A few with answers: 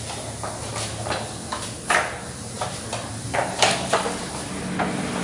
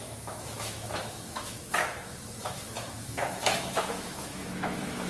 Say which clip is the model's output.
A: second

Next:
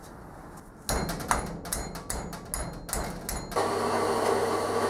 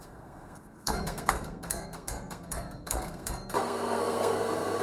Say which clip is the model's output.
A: second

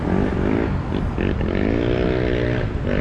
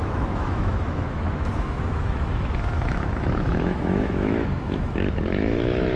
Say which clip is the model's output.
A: second